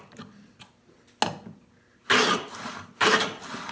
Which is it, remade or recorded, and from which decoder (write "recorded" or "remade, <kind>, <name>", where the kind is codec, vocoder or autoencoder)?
recorded